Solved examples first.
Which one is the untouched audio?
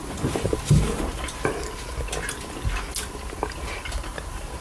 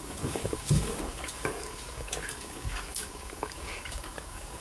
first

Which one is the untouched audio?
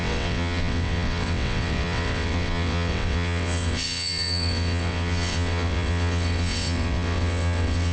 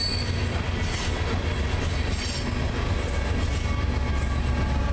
second